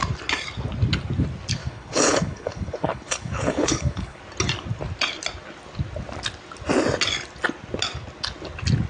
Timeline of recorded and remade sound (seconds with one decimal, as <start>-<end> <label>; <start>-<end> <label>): 0.0-1.6 recorded; 1.6-4.2 remade; 4.2-8.9 recorded